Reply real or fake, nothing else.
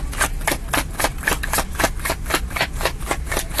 real